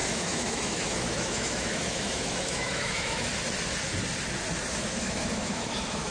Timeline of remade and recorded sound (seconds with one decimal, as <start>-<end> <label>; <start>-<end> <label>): 0.0-3.3 remade; 3.3-4.7 recorded; 4.7-6.1 remade

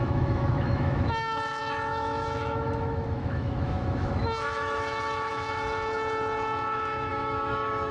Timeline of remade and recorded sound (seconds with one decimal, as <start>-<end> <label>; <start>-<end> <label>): 0.0-7.9 remade

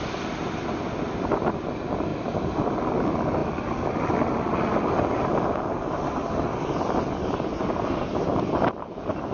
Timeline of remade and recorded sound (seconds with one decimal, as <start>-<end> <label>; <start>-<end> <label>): 0.0-9.3 recorded